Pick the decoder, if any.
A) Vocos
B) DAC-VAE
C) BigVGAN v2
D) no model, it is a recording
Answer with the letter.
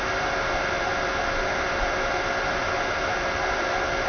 D